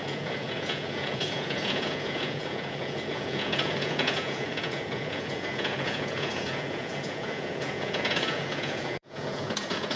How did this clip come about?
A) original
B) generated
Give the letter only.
B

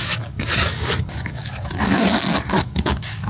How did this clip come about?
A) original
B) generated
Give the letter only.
B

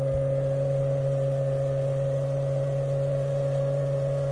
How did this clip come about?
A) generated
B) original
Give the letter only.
B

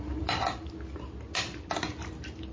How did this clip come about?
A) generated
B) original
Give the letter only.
B